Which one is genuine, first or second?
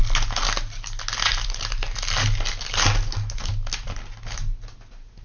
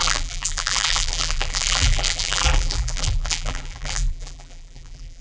first